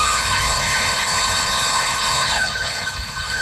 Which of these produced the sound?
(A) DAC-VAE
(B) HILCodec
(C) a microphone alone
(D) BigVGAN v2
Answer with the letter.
B